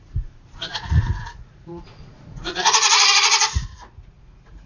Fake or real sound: fake